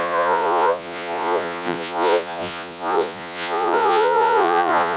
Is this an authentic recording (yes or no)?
no